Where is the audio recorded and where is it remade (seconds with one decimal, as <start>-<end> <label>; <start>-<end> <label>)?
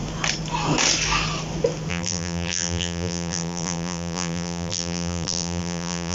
0.0-1.9 recorded; 1.9-6.1 remade